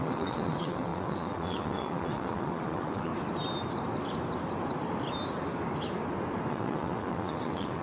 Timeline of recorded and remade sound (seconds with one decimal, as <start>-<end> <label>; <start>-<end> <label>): 0.0-3.1 remade; 3.1-6.5 recorded; 6.5-7.8 remade